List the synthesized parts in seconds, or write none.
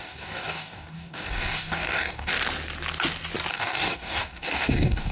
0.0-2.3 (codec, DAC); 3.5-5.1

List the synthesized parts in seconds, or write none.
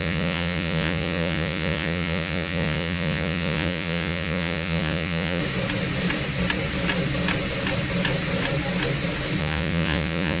0.0-5.4 (vocoder, Vocos); 9.4-10.4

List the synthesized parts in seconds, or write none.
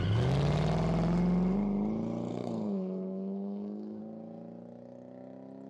2.3-4.0 (codec, SNAC)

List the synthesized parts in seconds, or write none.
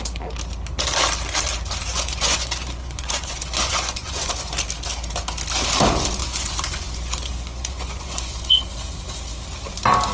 1.9-4.5 (vocoder, Vocos); 6.2-8.6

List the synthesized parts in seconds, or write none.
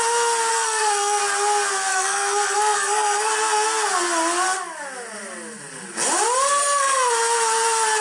0.5-1.2 (codec, SNAC); 1.9-3.3; 6.6-7.1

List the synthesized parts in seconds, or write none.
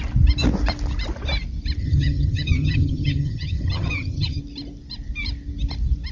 1.8-4.4 (vocoder, HiFi-GAN)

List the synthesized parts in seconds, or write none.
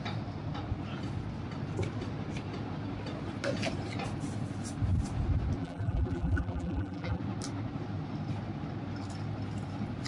5.6-7.2 (vocoder, BigVGAN v2)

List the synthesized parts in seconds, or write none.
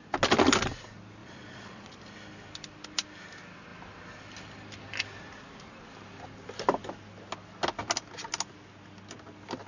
1.2-2.0 (vocoder, Vocos)